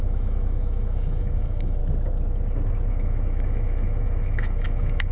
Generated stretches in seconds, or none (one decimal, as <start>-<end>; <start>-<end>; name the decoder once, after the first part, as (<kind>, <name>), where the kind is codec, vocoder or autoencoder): 0.0-1.8 (autoencoder, DAC-VAE); 2.9-5.1